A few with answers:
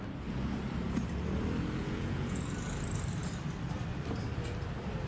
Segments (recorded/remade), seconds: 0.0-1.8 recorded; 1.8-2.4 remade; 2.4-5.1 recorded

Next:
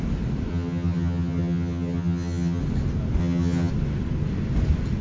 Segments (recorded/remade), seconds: 0.0-0.5 recorded; 0.5-2.6 remade; 2.6-3.2 recorded; 3.2-3.7 remade; 3.7-5.0 recorded

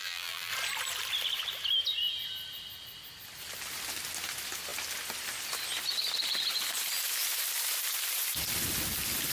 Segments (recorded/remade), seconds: 0.0-0.5 remade; 0.5-9.3 recorded

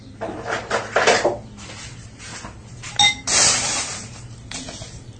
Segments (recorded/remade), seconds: 0.0-5.2 recorded